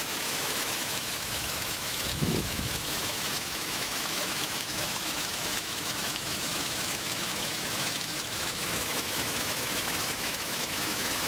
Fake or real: fake